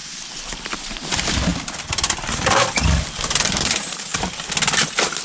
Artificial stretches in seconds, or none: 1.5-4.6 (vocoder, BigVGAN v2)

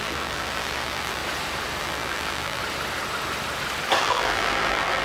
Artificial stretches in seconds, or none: 0.0-1.2 (vocoder, BigVGAN v2); 1.8-2.6; 4.0-5.0

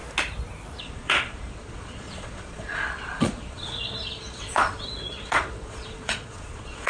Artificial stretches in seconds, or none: 0.8-6.9 (vocoder, Vocos)

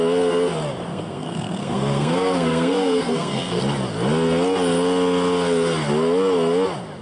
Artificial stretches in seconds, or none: 0.9-3.6 (codec, SNAC)

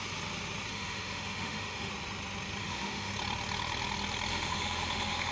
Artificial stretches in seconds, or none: 0.7-1.9 (autoencoder, DAC-VAE); 2.6-3.1; 4.3-5.3

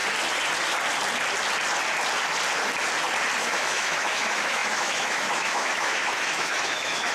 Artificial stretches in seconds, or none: 3.4-7.1 (autoencoder, DAC-VAE)

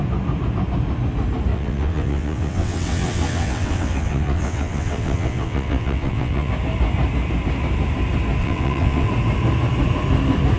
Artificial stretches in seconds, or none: 1.5-6.5 (vocoder, WaveNeXt); 8.4-9.1